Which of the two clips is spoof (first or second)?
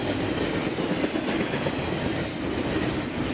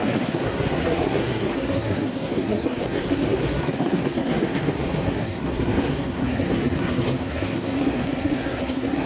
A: second